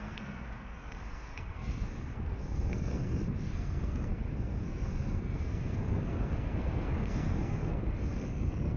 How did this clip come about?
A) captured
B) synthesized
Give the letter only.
B